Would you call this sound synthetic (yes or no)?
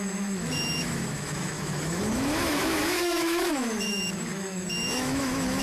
yes